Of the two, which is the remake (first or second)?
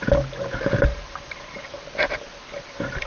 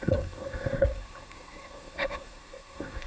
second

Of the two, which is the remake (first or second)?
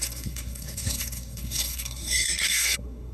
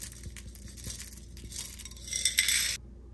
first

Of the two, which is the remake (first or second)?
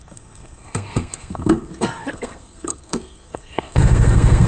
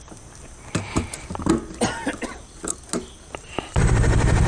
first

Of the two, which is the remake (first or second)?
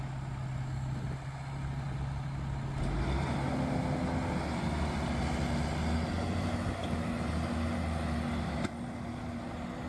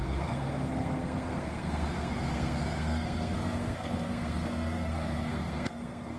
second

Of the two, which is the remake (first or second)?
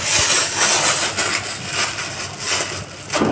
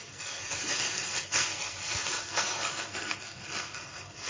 second